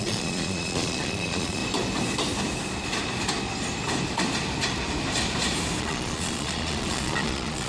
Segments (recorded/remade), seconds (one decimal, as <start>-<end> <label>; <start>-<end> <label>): 0.0-1.6 remade; 1.6-5.8 recorded; 5.8-7.7 remade